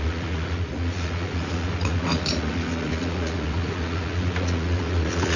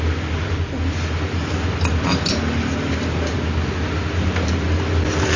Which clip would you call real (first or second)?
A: second